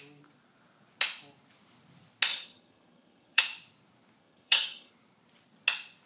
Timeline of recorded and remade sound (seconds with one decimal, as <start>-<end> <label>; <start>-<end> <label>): 0.0-2.3 recorded; 2.3-3.4 remade; 3.4-4.2 recorded; 4.2-4.9 remade; 4.9-6.1 recorded